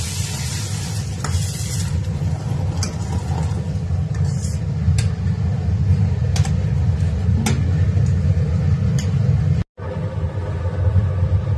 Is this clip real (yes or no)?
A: yes